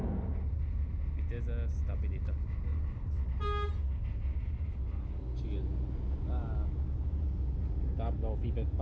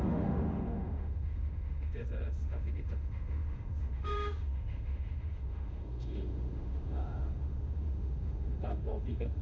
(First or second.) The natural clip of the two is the first